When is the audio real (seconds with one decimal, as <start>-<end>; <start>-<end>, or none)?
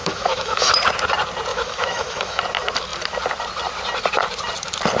0.7-1.5; 2.4-5.0